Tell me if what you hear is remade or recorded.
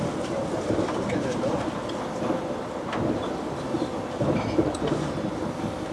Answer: recorded